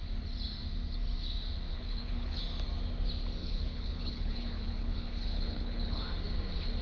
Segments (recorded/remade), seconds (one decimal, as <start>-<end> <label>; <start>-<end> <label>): 0.0-1.7 recorded; 1.7-2.4 remade; 2.4-3.4 recorded; 3.4-6.0 remade; 6.0-6.8 recorded